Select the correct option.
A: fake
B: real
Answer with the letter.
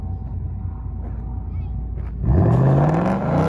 B